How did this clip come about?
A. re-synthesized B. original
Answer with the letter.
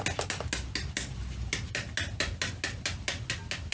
B